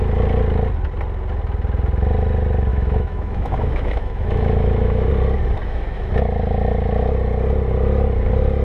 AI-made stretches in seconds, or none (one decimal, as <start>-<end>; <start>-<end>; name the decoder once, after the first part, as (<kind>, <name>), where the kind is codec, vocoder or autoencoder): 2.7-5.1 (autoencoder, DAC-VAE); 5.6-6.1